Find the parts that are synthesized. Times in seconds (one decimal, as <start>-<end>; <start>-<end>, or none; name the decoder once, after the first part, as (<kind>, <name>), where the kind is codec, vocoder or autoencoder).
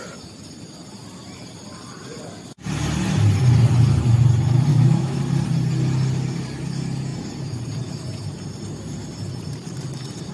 4.7-5.2 (autoencoder, DAC-VAE)